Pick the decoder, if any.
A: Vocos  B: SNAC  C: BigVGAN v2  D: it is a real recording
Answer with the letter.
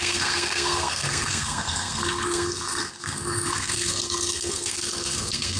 B